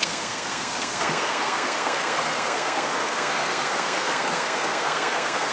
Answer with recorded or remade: remade